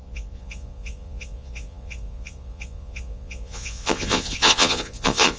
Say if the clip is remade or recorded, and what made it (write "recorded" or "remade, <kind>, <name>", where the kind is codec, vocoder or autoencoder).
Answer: remade, vocoder, Vocos